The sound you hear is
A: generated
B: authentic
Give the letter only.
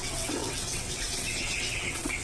A